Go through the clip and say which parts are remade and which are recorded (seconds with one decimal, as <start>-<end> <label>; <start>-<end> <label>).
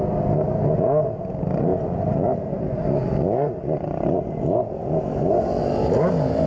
0.0-6.5 recorded